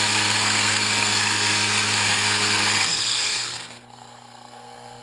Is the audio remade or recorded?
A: remade